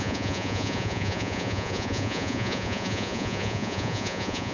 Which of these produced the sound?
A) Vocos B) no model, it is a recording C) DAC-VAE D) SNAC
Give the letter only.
A